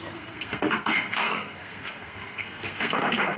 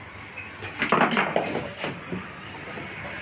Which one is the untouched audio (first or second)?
second